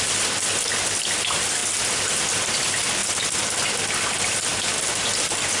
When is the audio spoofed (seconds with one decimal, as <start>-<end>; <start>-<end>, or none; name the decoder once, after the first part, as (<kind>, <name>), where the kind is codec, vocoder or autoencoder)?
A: 0.0-1.6 (vocoder, BigVGAN v2); 2.1-5.6